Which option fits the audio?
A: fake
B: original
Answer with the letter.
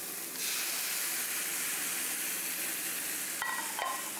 B